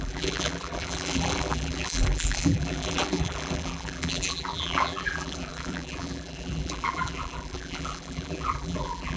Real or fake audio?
fake